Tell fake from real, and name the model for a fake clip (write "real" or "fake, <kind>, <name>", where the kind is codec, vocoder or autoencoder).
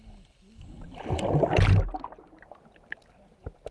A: real